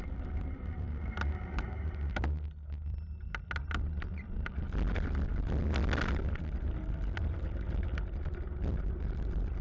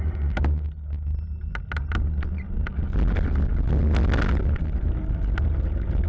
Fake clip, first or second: first